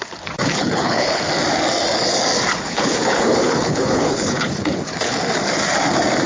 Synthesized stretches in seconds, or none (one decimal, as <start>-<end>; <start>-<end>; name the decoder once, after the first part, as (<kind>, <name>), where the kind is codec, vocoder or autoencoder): 0.4-1.2 (codec, HILCodec); 2.5-5.1